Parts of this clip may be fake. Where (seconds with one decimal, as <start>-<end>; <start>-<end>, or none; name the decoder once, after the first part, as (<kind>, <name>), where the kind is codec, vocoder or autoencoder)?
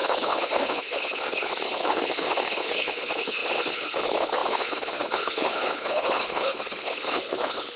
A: 0.0-7.8 (codec, HILCodec)